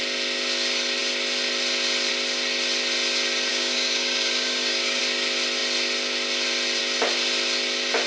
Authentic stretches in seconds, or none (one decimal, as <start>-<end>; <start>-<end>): 0.0-3.5; 5.0-8.1